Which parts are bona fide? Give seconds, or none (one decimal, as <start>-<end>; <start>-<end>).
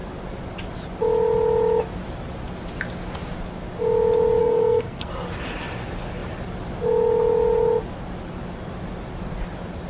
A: 0.0-4.4; 5.1-9.9